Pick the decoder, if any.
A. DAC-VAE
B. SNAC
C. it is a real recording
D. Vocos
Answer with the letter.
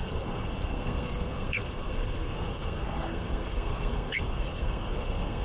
B